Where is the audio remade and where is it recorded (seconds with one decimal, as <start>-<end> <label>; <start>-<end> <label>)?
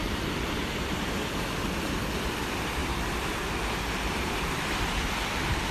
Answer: 0.0-1.5 remade; 1.5-2.8 recorded; 2.8-4.5 remade; 4.5-5.7 recorded